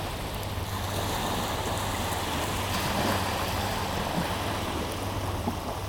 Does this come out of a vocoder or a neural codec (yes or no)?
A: no